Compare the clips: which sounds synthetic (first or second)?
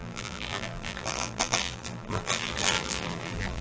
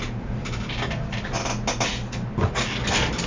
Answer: first